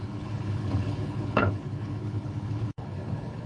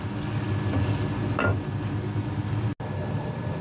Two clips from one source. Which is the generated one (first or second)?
first